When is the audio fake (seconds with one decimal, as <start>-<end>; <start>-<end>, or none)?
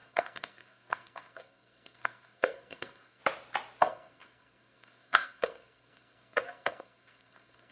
0.0-3.2; 3.8-7.7